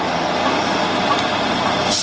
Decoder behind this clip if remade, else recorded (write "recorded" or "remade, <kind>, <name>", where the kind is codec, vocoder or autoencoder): recorded